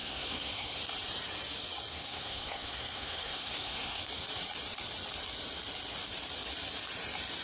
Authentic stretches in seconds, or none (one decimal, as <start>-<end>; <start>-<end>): 0.8-1.9; 4.0-7.4